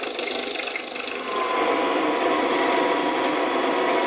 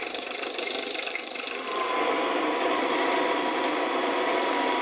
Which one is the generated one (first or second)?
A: second